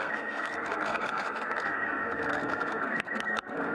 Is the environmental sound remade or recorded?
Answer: remade